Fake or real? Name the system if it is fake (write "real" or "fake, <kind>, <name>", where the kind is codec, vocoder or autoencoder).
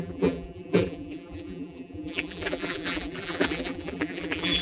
fake, vocoder, BigVGAN v2